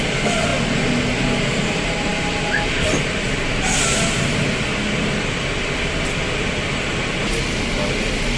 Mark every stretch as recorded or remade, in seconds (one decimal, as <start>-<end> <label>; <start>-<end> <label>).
0.0-8.4 recorded